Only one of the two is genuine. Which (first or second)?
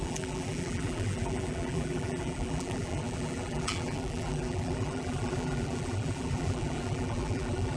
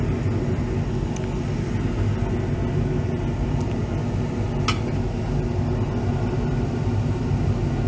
second